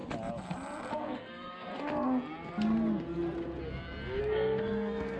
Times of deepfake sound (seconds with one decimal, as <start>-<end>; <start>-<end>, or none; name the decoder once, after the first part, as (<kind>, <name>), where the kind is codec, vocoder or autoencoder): 0.9-1.7 (codec, SNAC); 4.2-5.2